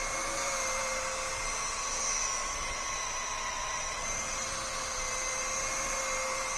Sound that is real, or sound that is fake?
fake